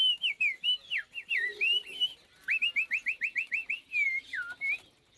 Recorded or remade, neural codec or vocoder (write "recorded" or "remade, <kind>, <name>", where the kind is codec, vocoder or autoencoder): recorded